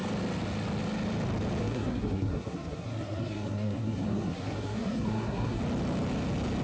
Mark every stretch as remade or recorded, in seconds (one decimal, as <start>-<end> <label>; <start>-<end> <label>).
0.0-1.6 recorded; 1.6-5.6 remade; 5.6-6.6 recorded